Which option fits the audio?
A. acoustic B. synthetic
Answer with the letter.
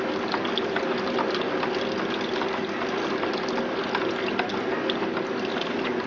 A